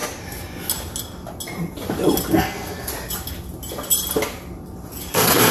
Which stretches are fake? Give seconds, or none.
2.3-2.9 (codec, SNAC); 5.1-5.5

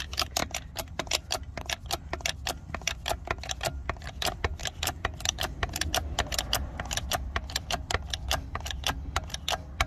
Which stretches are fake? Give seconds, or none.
none

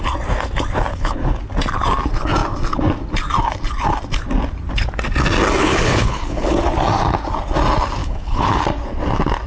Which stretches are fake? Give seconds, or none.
0.9-1.4 (codec, HILCodec); 5.6-6.6; 8.0-8.6

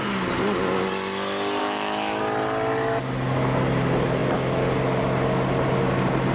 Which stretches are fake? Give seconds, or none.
1.6-2.2 (autoencoder, DAC-VAE)